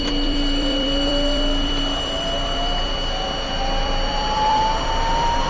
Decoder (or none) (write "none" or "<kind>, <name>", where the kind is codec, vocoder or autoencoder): vocoder, BigVGAN v2